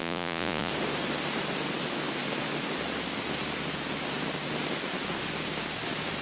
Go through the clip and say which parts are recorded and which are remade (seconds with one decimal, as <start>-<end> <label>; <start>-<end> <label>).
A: 0.0-0.7 remade; 0.7-6.2 recorded